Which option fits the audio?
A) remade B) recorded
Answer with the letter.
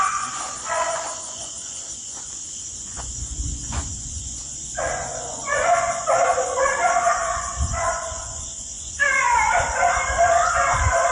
A